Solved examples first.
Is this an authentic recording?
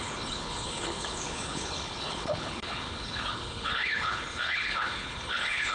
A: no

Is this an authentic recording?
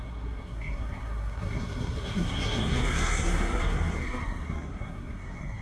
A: no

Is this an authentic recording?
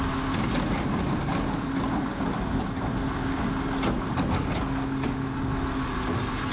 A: yes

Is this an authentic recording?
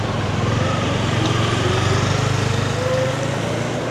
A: yes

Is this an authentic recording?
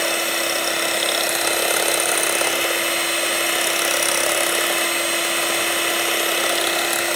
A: yes